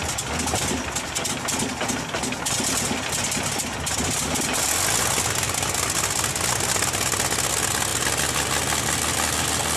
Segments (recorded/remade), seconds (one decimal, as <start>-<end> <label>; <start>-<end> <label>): 0.0-9.8 recorded